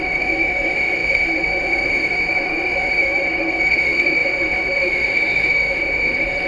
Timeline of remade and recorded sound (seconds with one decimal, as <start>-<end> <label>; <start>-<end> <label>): 0.0-6.5 remade